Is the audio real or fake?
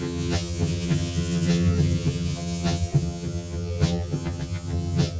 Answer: fake